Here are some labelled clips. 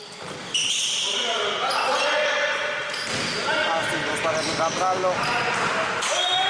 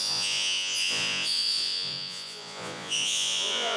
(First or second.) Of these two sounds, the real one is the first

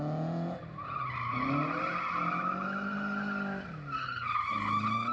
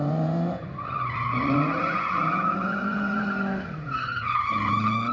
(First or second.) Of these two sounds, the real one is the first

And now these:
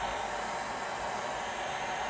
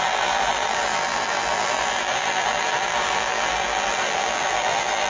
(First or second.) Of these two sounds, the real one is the first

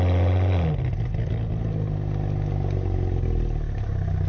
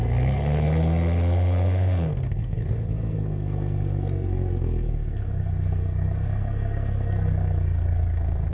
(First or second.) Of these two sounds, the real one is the first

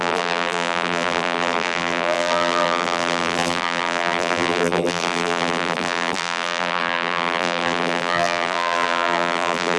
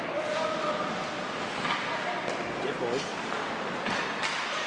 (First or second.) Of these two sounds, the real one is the second